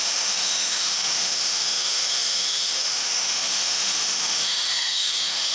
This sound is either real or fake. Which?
fake